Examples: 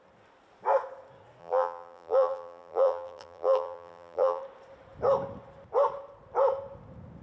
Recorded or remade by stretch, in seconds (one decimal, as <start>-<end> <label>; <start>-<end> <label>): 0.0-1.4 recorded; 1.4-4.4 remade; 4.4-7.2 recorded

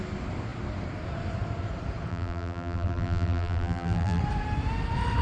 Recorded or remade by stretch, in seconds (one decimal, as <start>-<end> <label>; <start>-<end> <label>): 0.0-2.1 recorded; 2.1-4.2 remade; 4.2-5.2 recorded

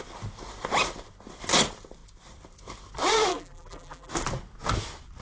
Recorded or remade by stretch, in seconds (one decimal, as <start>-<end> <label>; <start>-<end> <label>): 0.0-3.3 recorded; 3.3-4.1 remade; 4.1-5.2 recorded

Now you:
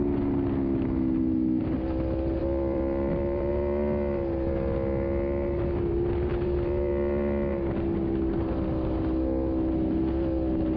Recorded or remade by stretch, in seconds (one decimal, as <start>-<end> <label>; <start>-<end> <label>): 0.0-2.4 recorded; 2.4-3.5 remade; 3.5-6.3 recorded; 6.3-7.5 remade; 7.5-10.8 recorded